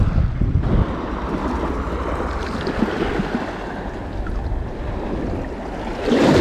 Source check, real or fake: real